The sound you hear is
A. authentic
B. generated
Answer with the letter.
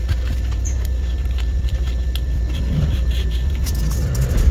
A